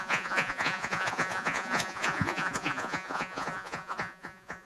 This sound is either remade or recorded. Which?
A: remade